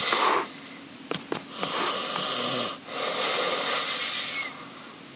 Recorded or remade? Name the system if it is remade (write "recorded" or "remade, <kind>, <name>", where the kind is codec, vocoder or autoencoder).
recorded